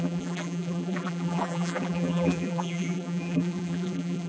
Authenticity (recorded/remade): remade